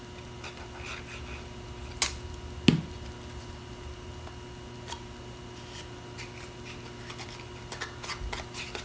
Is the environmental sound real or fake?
real